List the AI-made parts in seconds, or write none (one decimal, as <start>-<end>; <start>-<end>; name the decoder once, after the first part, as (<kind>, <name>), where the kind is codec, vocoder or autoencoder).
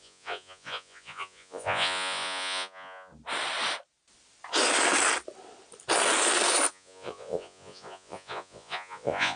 0.0-3.1 (vocoder, Vocos); 6.7-9.4